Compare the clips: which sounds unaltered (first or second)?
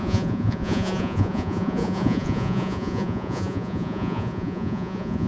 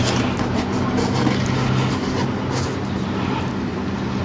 second